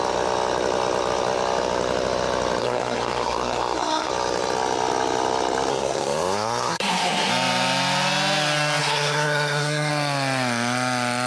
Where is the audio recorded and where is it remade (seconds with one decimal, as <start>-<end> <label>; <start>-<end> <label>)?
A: 0.0-2.6 recorded; 2.6-4.1 remade; 4.1-5.7 recorded; 5.7-7.3 remade; 7.3-8.8 recorded; 8.8-9.9 remade; 9.9-11.3 recorded